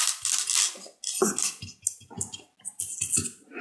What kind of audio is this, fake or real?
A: real